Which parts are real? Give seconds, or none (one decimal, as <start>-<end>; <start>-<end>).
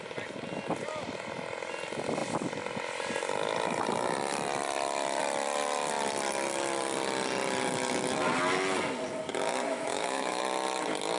0.0-9.7; 10.4-11.2